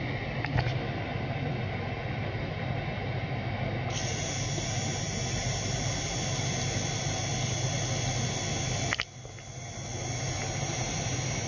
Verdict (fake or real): real